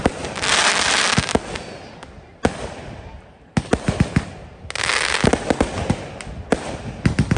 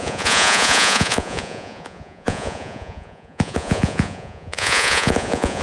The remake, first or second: second